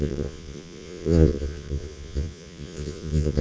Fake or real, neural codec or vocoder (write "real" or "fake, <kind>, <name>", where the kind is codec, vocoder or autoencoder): fake, vocoder, Vocos